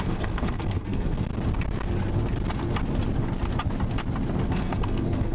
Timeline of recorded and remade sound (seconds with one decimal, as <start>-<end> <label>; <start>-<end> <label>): 0.0-1.3 remade; 1.3-4.5 recorded; 4.5-5.3 remade